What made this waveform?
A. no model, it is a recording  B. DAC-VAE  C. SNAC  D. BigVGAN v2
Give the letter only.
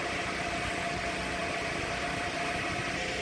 A